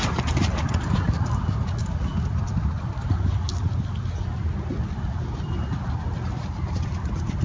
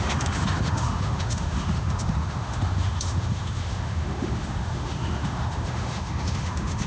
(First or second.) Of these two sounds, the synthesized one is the second